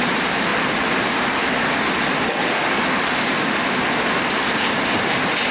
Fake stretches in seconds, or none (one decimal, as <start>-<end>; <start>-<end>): none